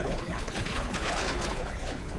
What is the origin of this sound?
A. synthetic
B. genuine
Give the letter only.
A